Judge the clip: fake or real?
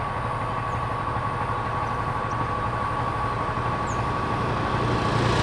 real